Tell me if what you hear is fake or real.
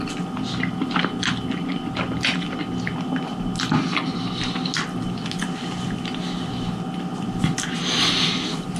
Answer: real